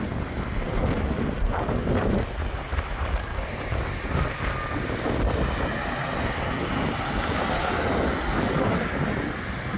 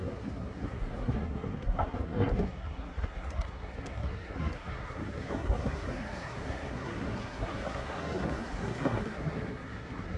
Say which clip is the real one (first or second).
first